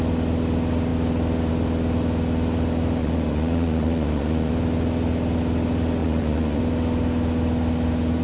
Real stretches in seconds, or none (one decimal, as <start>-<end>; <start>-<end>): 0.0-3.0; 4.5-6.0; 6.6-8.2